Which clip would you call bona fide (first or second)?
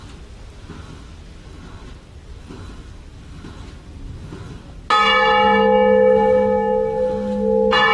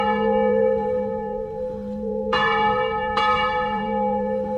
first